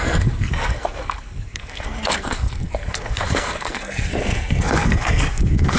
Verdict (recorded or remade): remade